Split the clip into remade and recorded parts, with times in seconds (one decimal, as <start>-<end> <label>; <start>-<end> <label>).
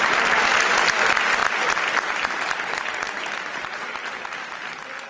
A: 0.0-5.1 recorded